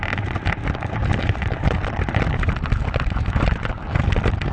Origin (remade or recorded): recorded